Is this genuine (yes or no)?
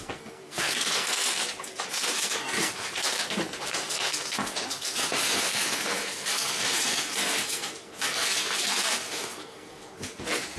no